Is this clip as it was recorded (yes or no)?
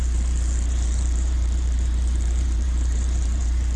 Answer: no